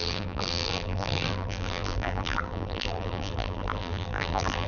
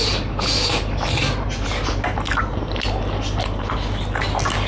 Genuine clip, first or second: second